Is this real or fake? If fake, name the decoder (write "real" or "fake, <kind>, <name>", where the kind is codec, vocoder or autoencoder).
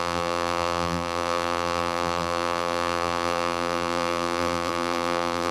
fake, vocoder, BigVGAN v2